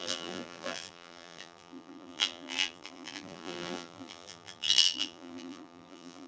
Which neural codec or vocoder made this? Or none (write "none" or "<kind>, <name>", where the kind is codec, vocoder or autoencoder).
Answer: vocoder, BigVGAN v2